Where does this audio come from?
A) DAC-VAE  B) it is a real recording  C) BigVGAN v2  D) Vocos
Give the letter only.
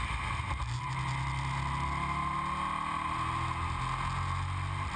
B